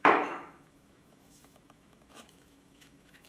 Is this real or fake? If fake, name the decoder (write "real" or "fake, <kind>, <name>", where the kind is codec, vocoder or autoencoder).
fake, autoencoder, DAC-VAE